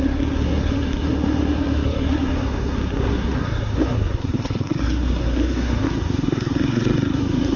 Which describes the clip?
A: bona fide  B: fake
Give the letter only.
B